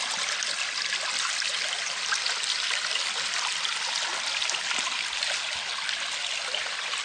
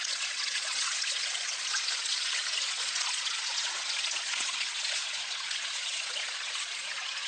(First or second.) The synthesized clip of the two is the second